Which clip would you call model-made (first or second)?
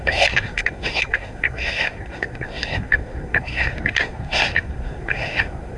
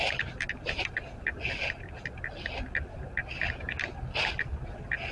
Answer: first